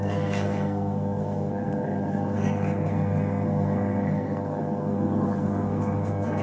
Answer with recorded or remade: remade